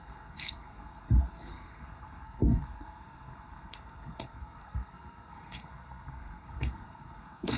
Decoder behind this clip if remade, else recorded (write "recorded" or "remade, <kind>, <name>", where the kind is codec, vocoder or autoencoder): remade, codec, SNAC